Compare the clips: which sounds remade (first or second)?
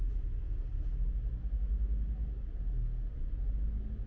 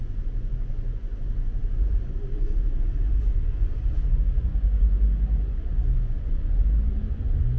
second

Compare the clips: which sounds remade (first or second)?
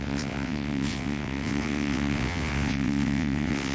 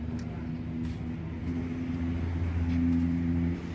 first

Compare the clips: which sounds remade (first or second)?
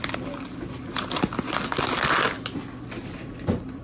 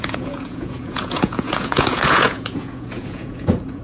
second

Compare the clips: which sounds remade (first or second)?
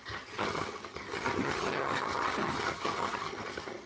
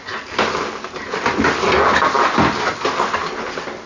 first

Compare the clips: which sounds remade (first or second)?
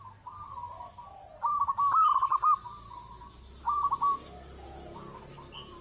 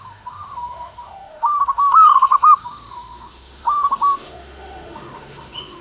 second